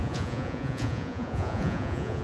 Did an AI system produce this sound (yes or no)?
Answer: yes